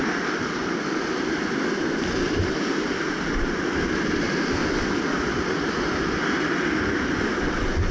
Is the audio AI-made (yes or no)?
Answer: no